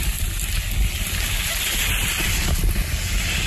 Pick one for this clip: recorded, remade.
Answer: recorded